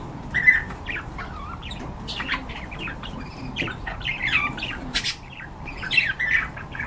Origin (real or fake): fake